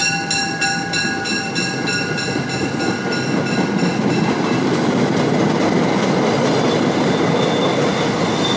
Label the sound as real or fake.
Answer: real